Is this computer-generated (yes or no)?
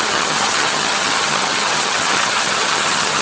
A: yes